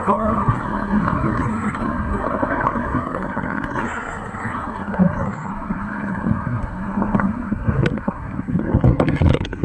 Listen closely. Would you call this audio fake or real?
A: fake